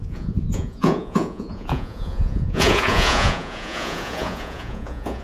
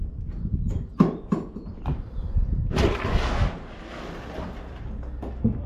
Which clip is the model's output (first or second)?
first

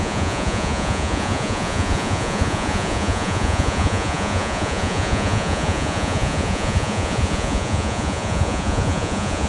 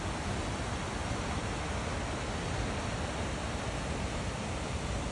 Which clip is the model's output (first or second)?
first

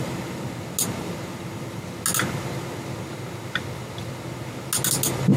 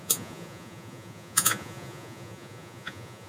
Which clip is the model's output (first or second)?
second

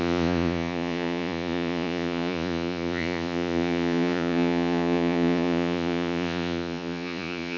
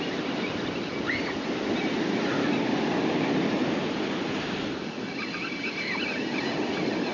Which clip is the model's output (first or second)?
first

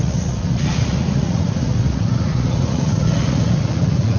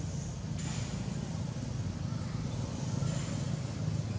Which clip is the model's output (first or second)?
first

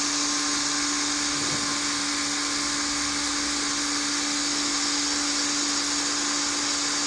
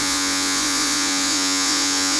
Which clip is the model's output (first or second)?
second